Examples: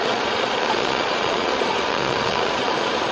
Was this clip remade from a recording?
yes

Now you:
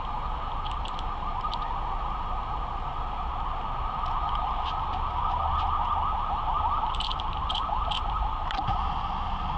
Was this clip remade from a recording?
no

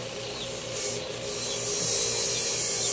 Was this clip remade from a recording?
no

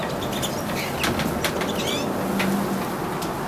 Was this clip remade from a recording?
no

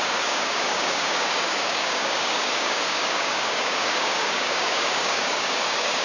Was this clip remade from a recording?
yes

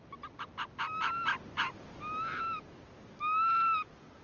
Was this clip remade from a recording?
no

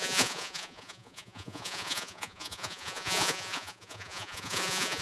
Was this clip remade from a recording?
yes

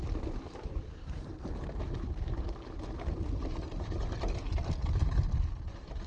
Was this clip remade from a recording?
yes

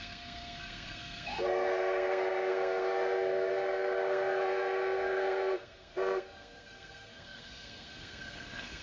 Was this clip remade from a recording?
yes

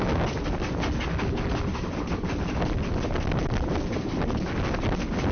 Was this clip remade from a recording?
no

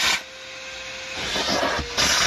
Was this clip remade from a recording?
no